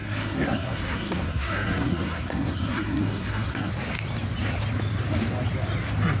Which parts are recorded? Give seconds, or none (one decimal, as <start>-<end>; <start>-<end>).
3.7-6.2